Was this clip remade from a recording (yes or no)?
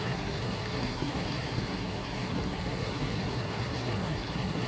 yes